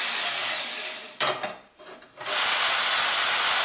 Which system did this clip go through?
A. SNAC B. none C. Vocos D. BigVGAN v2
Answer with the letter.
B